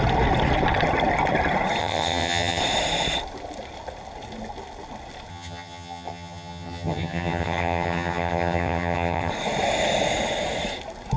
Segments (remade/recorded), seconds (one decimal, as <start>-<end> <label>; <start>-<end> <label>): 0.0-1.8 recorded; 1.8-2.6 remade; 2.6-5.3 recorded; 5.3-9.3 remade; 9.3-11.2 recorded

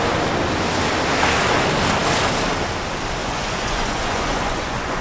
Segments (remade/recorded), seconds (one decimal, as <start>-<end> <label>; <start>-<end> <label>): 0.0-3.2 recorded; 3.2-5.0 remade

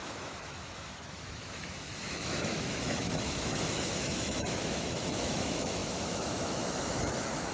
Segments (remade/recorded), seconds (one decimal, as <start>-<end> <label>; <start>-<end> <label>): 0.0-7.5 remade

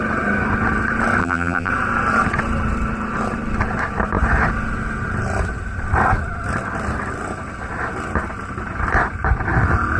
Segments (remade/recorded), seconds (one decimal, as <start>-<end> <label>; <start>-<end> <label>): 0.0-1.2 recorded; 1.2-1.7 remade; 1.7-10.0 recorded

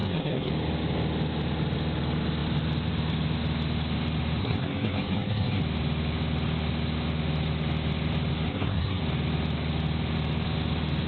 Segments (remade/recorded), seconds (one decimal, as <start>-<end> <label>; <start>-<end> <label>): 0.0-0.5 remade; 0.5-4.4 recorded; 4.4-5.6 remade; 5.6-8.5 recorded; 8.5-9.0 remade; 9.0-11.1 recorded

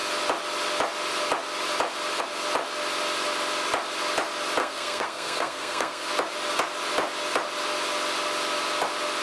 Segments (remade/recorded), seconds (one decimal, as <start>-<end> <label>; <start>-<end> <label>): 0.0-4.6 recorded; 4.6-6.1 remade; 6.1-9.2 recorded

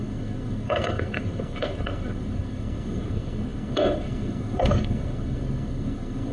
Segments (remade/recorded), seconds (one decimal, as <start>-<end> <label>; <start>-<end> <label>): 0.0-6.3 remade

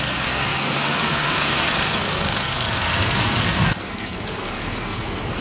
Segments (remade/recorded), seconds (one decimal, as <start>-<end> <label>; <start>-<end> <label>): 0.0-5.4 remade